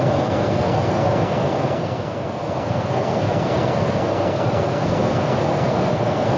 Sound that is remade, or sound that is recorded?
remade